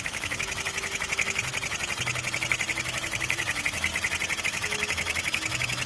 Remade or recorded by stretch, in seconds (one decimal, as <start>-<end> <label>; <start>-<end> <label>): 0.0-1.5 remade; 1.5-2.7 recorded; 2.7-3.9 remade; 3.9-4.4 recorded; 4.4-5.9 remade